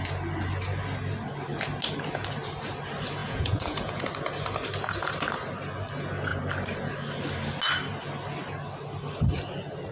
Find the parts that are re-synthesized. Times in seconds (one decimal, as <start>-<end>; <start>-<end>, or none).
3.2-4.0